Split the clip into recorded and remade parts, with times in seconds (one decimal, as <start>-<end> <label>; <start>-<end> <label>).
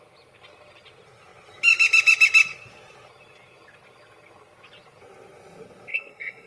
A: 0.0-5.9 recorded; 5.9-6.5 remade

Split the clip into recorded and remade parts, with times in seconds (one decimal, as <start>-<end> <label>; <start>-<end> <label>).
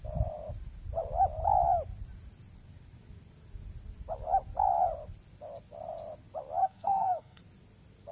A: 0.0-6.6 recorded; 6.6-7.4 remade; 7.4-8.1 recorded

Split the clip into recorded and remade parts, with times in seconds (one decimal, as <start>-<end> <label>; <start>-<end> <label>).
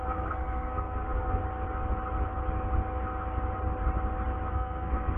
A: 0.0-1.4 remade; 1.4-4.5 recorded; 4.5-5.2 remade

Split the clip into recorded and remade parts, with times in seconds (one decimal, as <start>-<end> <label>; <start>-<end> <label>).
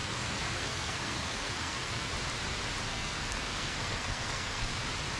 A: 0.0-2.1 remade; 2.1-2.9 recorded; 2.9-4.8 remade; 4.8-5.2 recorded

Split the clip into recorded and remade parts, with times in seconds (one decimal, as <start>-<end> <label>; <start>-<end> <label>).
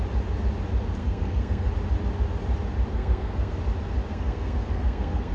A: 0.0-1.0 recorded; 1.0-1.7 remade; 1.7-2.9 recorded; 2.9-3.6 remade; 3.6-4.1 recorded; 4.1-5.3 remade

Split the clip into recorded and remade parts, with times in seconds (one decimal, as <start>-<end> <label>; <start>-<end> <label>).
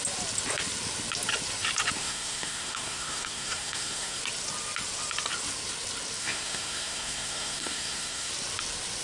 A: 0.0-2.0 recorded; 2.0-4.2 remade; 4.2-6.2 recorded; 6.2-8.3 remade; 8.3-9.0 recorded